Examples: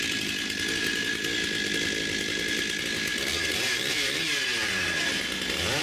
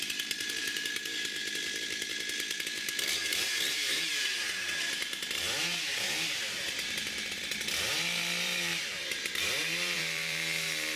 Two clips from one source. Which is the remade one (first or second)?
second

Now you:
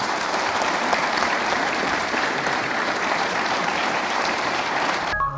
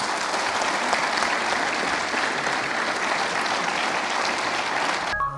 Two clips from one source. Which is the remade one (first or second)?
first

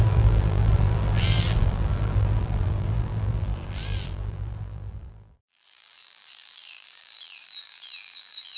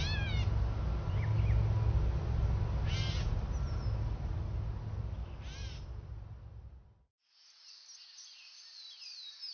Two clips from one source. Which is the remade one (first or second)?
first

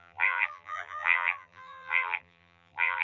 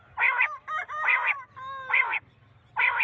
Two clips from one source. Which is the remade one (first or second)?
first